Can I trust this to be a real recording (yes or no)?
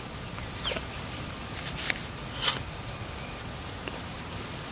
yes